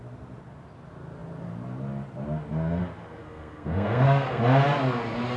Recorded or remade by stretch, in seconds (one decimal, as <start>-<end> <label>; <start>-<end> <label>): 0.0-3.2 recorded; 3.2-4.4 remade; 4.4-5.4 recorded